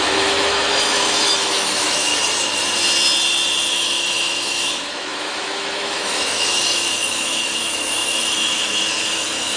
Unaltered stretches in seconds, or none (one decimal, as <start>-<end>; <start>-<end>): 2.1-3.7